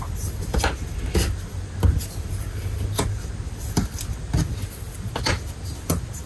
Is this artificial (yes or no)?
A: no